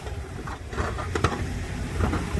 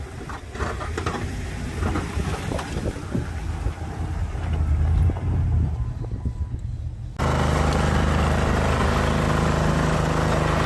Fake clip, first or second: first